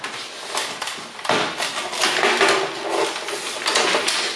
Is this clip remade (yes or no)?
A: no